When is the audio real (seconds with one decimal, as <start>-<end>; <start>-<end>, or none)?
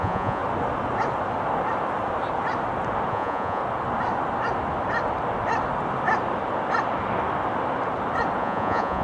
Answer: 0.4-3.1; 3.6-8.4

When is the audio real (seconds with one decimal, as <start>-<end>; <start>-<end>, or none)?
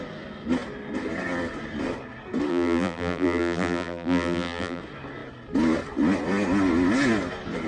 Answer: 0.0-2.5; 4.8-7.7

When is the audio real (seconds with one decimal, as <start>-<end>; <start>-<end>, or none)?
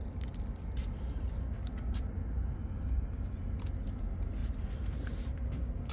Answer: 0.0-4.4; 5.4-5.9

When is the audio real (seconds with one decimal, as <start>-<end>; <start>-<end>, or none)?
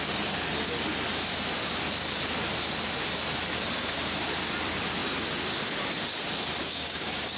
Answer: 0.0-6.6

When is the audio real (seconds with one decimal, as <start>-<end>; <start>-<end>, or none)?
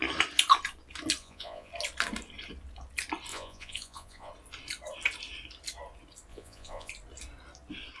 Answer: 0.0-1.2; 1.7-3.3; 4.3-6.3; 6.9-8.0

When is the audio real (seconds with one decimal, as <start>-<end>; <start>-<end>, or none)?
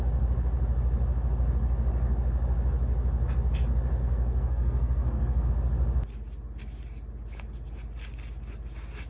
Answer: 0.0-4.0; 5.5-9.1